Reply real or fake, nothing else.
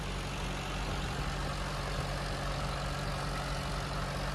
real